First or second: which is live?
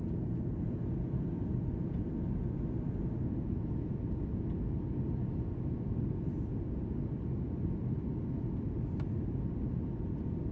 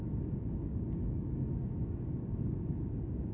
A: first